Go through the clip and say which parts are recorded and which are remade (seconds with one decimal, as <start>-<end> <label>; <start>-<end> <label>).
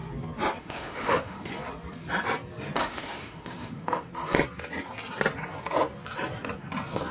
0.0-0.6 recorded; 0.6-1.5 remade; 1.5-2.8 recorded; 2.8-4.1 remade; 4.1-7.1 recorded